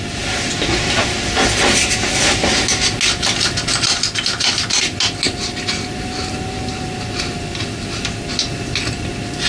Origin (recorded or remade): recorded